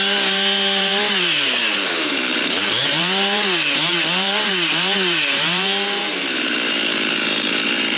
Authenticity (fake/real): fake